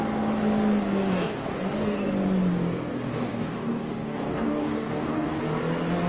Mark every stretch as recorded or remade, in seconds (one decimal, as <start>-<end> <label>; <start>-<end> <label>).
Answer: 0.0-0.9 recorded; 0.9-2.0 remade; 2.0-2.5 recorded; 2.5-5.4 remade; 5.4-6.1 recorded